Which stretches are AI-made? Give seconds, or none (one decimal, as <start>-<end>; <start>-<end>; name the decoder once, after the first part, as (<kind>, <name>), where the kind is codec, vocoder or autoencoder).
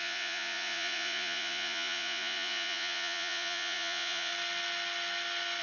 0.0-4.3 (vocoder, Vocos)